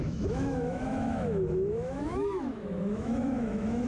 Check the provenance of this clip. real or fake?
fake